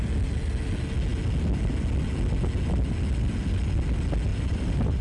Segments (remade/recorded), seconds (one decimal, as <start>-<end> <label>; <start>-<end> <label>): 0.0-4.3 recorded; 4.3-5.0 remade

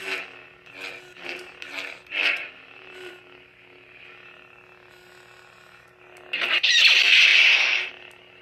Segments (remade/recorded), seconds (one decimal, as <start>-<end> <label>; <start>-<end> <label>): 0.0-2.2 recorded; 2.2-3.1 remade; 3.1-7.3 recorded; 7.3-7.9 remade; 7.9-8.4 recorded